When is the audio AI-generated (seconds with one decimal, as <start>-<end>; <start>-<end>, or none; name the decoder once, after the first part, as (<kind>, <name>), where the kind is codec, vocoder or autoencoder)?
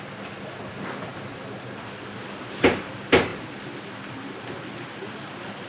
none